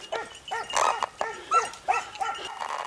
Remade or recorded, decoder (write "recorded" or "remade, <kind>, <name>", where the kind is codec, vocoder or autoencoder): recorded